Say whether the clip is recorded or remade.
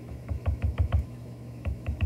remade